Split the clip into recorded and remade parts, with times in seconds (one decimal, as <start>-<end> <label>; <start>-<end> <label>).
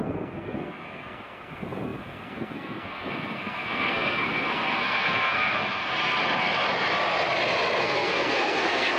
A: 0.0-5.8 remade; 5.8-7.8 recorded; 7.8-9.0 remade